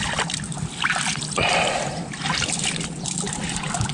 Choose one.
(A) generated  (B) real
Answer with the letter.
B